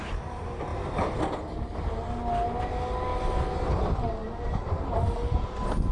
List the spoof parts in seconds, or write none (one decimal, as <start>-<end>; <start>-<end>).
3.1-3.7; 4.2-5.5